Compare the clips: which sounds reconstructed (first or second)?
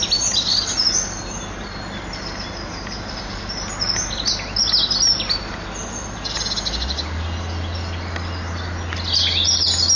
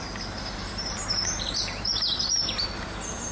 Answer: second